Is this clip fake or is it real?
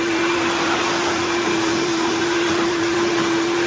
fake